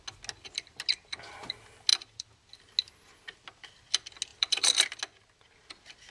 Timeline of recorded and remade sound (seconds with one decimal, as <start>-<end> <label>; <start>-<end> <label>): 0.0-1.9 recorded; 1.9-2.6 remade; 2.6-4.3 recorded; 4.3-5.0 remade; 5.0-6.1 recorded